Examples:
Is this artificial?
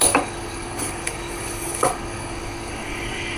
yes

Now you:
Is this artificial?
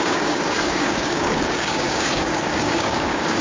yes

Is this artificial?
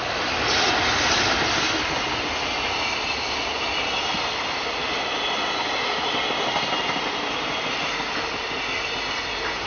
no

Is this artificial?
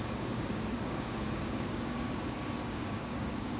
yes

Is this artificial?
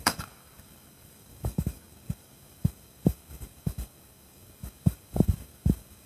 yes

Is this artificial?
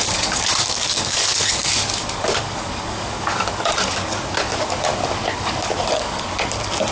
yes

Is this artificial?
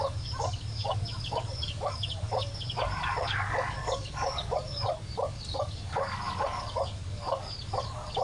yes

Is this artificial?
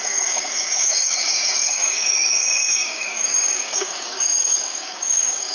yes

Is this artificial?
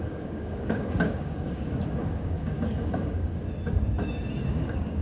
yes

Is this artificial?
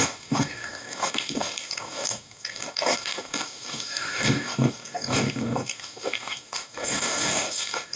yes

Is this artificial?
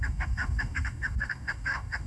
yes